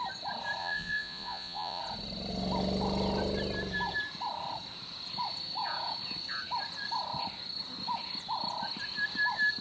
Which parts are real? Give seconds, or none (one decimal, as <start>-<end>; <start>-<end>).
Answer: 0.0-0.6; 1.8-9.6